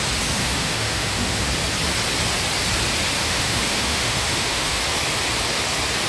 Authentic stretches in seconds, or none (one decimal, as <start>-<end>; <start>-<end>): 0.0-0.4; 1.5-3.2; 4.8-6.1